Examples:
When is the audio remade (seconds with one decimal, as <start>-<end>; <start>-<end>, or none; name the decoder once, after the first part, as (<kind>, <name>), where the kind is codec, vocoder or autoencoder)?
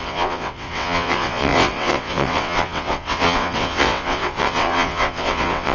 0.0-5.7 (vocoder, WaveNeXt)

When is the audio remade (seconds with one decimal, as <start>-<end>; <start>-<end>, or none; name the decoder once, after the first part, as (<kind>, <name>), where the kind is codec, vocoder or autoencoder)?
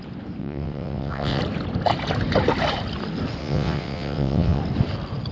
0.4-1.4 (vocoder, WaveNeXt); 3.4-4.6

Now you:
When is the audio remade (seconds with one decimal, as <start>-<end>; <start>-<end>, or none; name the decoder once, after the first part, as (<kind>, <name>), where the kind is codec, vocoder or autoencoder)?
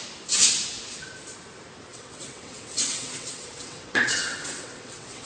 1.9-5.3 (vocoder, WaveNeXt)